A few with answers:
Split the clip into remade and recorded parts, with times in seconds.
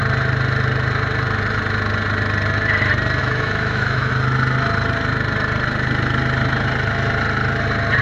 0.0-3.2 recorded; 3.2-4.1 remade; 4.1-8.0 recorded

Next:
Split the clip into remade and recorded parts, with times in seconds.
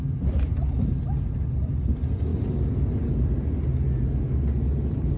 0.0-5.2 recorded